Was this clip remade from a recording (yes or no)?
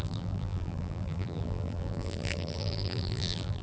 yes